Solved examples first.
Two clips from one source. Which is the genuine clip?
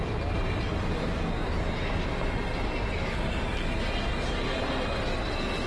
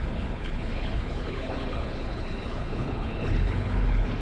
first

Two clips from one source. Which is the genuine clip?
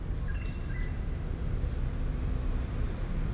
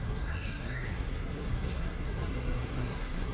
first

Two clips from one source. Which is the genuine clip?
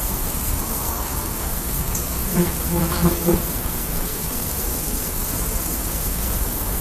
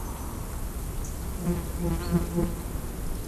second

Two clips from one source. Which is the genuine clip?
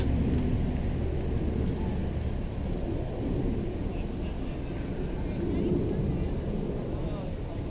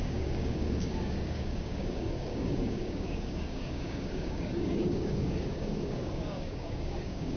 first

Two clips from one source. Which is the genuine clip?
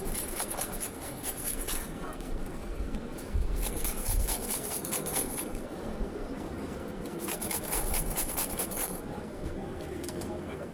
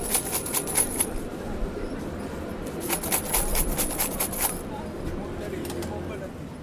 second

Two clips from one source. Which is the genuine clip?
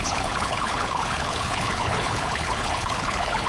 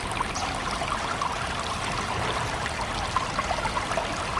second